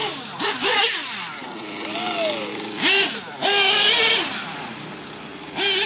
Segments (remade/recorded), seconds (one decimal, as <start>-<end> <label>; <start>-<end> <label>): 0.0-0.8 remade; 0.8-5.9 recorded